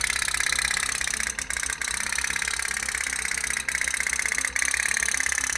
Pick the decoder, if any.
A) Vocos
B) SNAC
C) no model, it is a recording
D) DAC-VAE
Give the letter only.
C